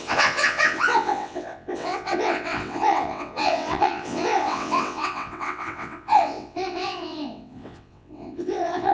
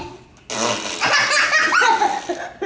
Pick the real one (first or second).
second